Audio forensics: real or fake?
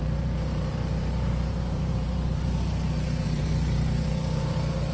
fake